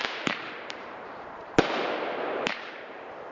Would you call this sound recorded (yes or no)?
no